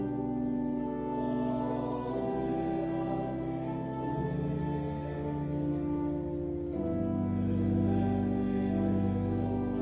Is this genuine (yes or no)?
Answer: yes